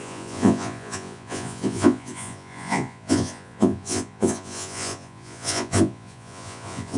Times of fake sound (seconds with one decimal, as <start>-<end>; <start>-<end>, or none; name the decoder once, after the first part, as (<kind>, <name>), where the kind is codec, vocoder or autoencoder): 0.0-7.0 (vocoder, Vocos)